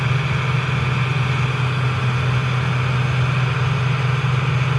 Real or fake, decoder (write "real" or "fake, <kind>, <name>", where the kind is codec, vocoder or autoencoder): real